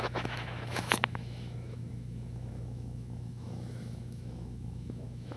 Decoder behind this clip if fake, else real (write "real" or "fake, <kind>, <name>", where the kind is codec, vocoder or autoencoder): fake, autoencoder, DAC-VAE